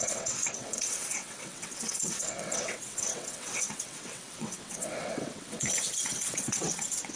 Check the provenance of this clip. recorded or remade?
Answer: remade